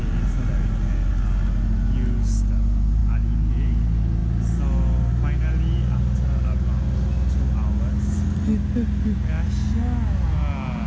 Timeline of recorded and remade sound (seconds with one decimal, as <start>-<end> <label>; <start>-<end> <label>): 0.0-10.9 recorded